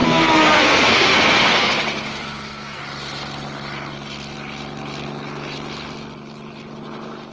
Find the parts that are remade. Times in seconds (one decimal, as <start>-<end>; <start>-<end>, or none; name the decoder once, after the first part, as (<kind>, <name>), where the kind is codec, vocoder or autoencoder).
0.0-1.7 (codec, SNAC); 2.2-2.8